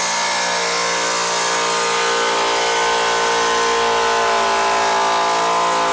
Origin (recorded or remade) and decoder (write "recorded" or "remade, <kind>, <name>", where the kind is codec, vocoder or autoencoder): recorded